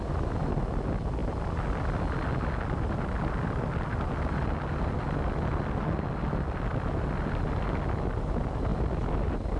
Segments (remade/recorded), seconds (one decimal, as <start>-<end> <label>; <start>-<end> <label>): 0.0-9.6 recorded